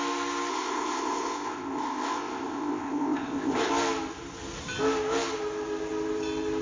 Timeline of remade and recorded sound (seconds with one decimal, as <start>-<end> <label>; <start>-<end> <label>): 0.0-0.5 recorded; 0.5-3.7 remade; 3.7-6.6 recorded